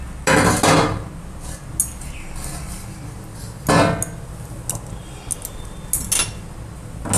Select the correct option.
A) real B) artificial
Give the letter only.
A